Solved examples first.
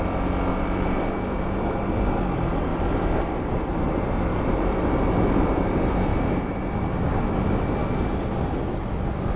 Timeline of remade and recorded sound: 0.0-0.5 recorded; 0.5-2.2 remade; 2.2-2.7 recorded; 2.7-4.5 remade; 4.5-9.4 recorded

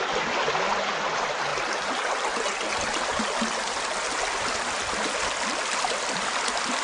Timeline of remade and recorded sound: 0.0-1.5 remade; 1.5-5.6 recorded; 5.6-6.8 remade

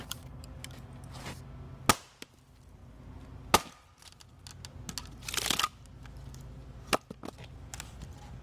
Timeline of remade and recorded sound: 0.0-8.4 recorded

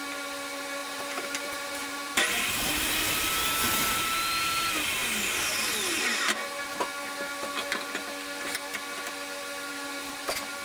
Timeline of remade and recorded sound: 0.0-0.8 recorded; 0.8-3.3 remade; 3.3-3.8 recorded; 3.8-4.3 remade; 4.3-10.6 recorded

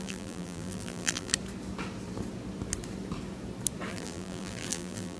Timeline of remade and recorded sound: 0.0-1.3 remade; 1.3-3.9 recorded; 3.9-5.2 remade

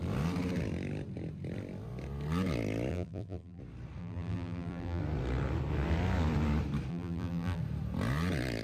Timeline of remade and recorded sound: 0.0-2.9 recorded; 2.9-3.6 remade; 3.6-4.0 recorded; 4.0-5.0 remade; 5.0-6.9 recorded; 6.9-7.6 remade; 7.6-8.6 recorded

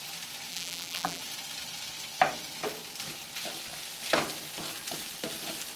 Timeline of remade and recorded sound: 0.0-0.5 recorded; 0.5-1.2 remade; 1.2-5.8 recorded

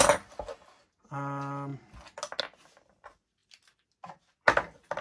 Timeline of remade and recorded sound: 0.0-5.0 recorded